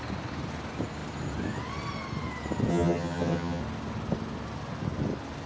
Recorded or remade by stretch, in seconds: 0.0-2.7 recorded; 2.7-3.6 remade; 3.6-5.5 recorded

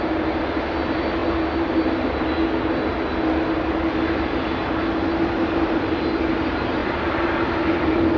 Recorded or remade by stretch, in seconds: 0.0-8.2 recorded

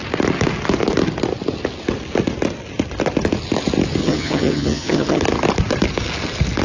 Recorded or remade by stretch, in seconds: 0.0-4.0 recorded; 4.0-5.2 remade; 5.2-6.6 recorded

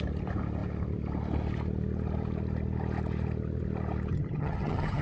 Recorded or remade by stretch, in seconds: 0.0-4.1 recorded; 4.1-5.0 remade

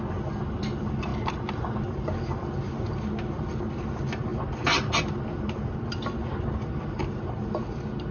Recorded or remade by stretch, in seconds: 0.0-8.1 recorded